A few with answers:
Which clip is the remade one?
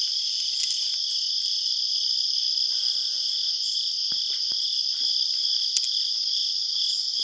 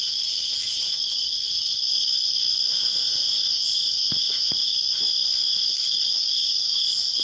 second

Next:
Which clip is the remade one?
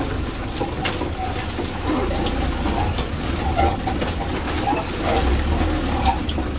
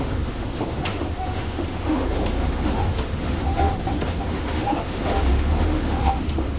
second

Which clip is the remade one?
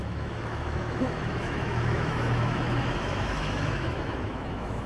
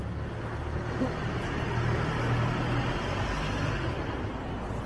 first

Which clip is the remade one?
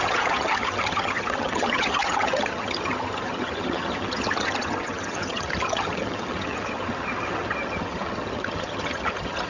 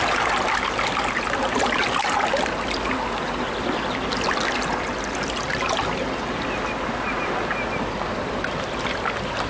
first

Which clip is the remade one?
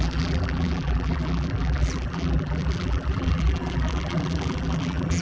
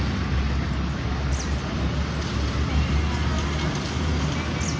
first